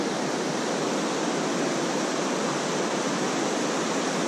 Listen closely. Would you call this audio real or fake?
real